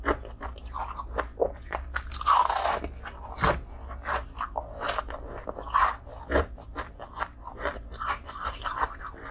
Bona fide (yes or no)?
yes